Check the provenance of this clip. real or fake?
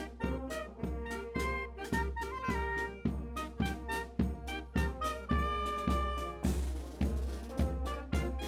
real